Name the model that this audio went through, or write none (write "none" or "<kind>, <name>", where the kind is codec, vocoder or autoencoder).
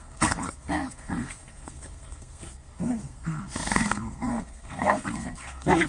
codec, SNAC